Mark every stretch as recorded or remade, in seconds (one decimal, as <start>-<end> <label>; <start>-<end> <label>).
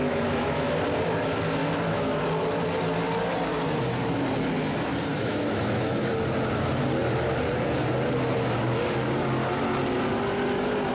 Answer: 0.0-0.8 remade; 0.8-1.6 recorded; 1.6-2.2 remade; 2.2-5.1 recorded; 5.1-6.1 remade; 6.1-10.9 recorded